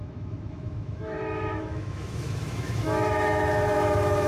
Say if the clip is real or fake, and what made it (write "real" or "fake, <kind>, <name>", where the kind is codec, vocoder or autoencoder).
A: fake, autoencoder, DAC-VAE